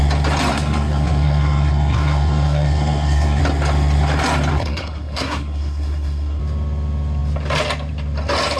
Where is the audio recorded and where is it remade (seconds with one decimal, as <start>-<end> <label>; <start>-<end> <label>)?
0.0-0.5 recorded; 0.5-3.4 remade; 3.4-4.5 recorded; 4.5-6.4 remade; 6.4-8.6 recorded

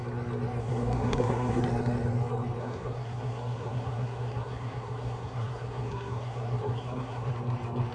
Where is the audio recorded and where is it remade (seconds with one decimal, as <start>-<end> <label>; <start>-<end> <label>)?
0.0-0.6 recorded; 0.6-1.6 remade; 1.6-2.6 recorded; 2.6-7.3 remade; 7.3-7.9 recorded

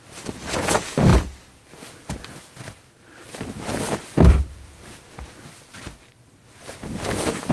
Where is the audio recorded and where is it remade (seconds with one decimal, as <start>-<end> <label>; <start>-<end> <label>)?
0.0-7.5 recorded